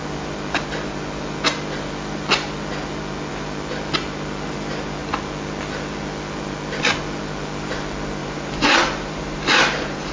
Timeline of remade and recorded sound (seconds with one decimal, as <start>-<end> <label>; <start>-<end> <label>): 0.0-8.2 recorded; 8.2-10.1 remade